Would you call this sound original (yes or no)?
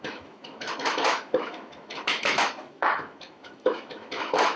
no